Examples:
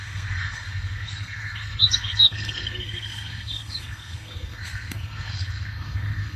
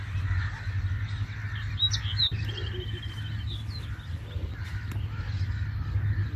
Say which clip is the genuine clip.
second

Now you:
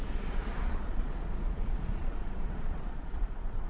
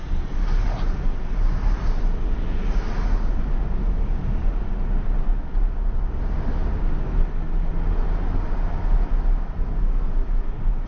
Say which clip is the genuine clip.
second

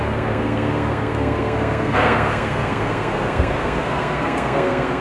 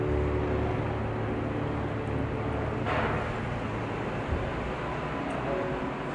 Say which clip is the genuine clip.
second